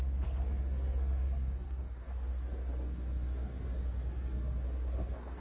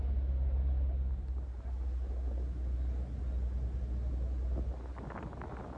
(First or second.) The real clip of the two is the second